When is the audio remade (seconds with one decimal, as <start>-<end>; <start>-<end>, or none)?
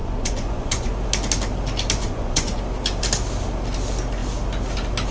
0.0-0.9; 2.0-2.6